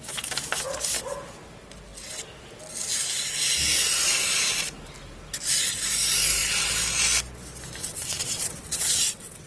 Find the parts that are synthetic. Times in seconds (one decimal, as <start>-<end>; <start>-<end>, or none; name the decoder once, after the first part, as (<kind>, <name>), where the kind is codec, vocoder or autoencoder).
7.8-9.5 (vocoder, WaveNeXt)